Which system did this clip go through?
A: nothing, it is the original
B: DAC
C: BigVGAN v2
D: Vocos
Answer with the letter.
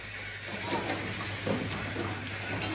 A